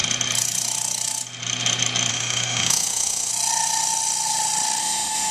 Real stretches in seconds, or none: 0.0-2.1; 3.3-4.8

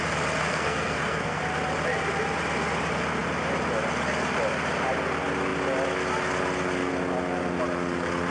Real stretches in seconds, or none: 0.0-0.4; 1.4-8.3

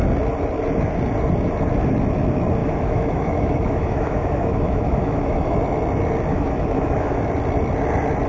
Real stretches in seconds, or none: 0.0-2.6; 5.6-6.3; 7.2-8.3

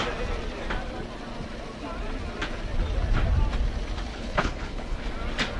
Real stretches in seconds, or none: 0.0-4.1; 5.0-5.6

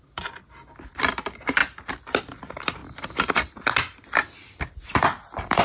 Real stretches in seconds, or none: 0.0-5.6

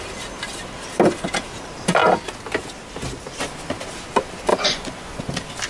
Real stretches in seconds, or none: 0.0-4.5; 5.2-5.7

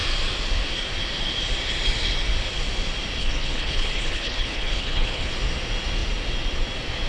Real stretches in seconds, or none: 0.0-3.2; 5.3-7.1